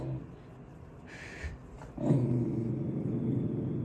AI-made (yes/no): no